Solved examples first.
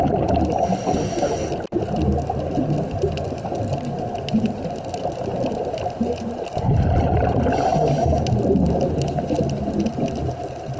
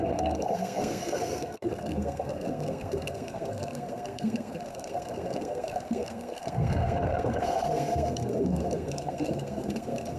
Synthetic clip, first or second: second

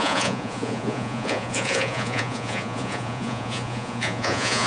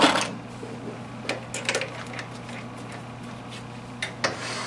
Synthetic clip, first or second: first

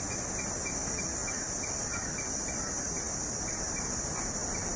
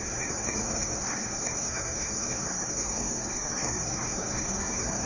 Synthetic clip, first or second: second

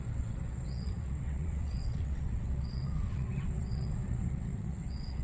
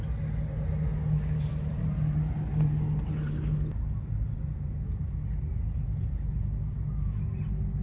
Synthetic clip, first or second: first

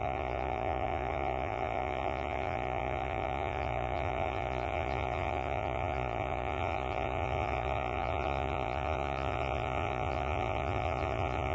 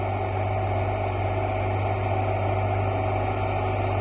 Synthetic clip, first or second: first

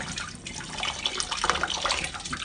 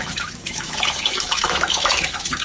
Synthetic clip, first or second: second